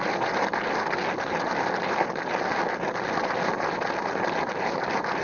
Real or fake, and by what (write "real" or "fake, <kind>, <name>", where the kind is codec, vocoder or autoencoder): real